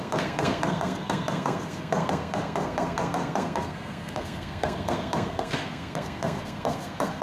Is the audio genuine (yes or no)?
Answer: no